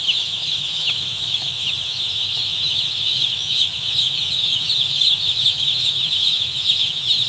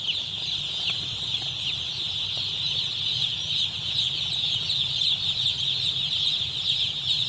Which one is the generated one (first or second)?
first